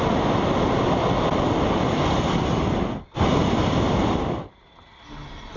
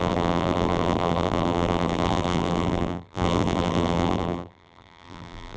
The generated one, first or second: second